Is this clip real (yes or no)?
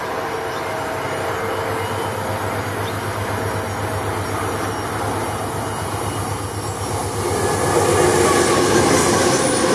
yes